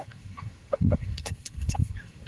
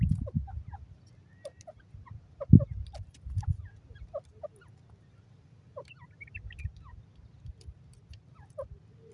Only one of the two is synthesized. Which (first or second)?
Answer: first